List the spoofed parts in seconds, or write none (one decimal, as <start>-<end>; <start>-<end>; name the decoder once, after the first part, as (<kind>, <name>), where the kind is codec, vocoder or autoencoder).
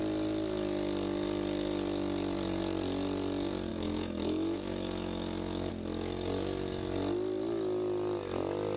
3.7-5.7 (autoencoder, DAC-VAE)